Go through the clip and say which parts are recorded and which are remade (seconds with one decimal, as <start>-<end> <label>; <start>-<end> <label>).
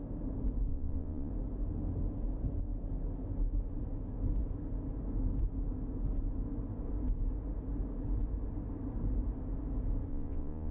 0.0-0.7 recorded; 0.7-1.3 remade; 1.3-10.1 recorded; 10.1-10.7 remade